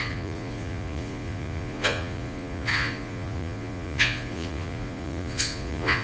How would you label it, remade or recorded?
remade